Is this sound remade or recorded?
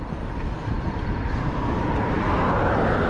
recorded